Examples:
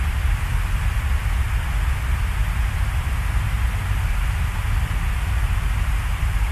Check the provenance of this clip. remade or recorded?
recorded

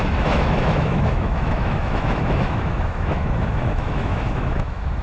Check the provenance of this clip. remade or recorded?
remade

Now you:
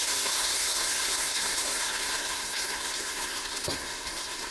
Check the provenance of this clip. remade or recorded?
remade